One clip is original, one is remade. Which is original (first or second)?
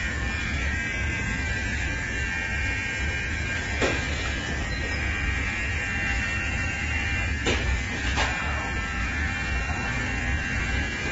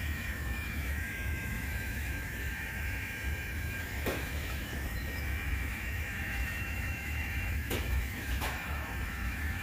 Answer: first